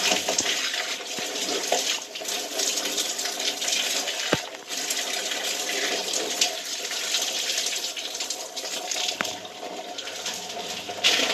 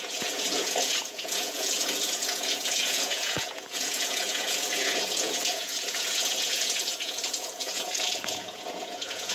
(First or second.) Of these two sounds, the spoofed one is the second